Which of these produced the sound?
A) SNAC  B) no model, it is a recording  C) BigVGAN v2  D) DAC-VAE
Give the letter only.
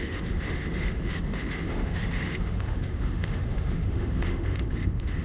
D